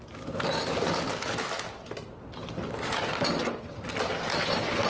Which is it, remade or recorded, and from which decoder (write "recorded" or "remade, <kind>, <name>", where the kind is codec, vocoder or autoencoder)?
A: recorded